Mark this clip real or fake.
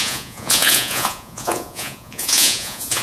fake